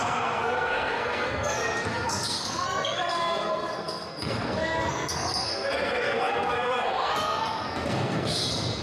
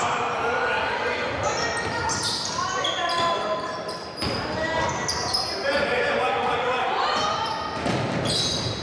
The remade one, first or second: first